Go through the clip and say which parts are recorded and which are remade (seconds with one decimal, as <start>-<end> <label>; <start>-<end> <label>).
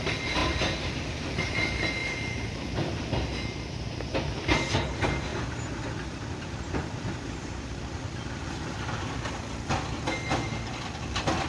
0.0-2.0 recorded; 2.0-3.1 remade; 3.1-5.3 recorded; 5.3-9.3 remade; 9.3-11.5 recorded